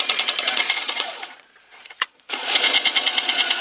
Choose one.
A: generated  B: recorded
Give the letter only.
A